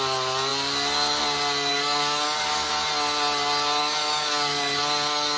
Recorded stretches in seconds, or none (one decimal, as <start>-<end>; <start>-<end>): 0.0-1.7; 2.7-3.8